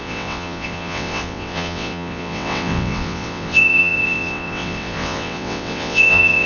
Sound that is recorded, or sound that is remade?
remade